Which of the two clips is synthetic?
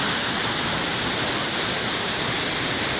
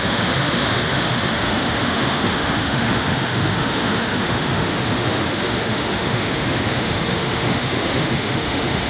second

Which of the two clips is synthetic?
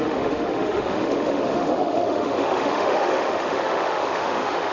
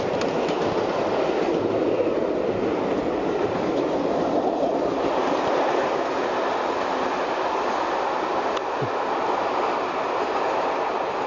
first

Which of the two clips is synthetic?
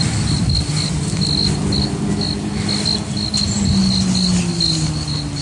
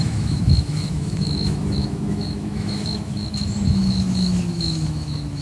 second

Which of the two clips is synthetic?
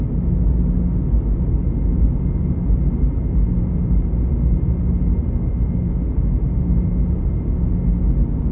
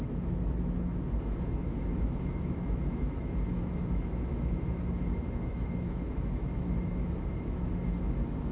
second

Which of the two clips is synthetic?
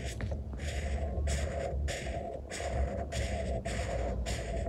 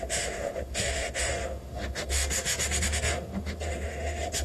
second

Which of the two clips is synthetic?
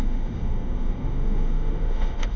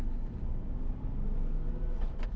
first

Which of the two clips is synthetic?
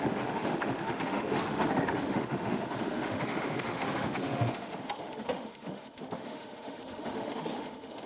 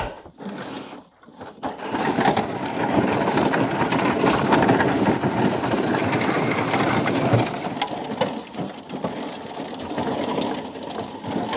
first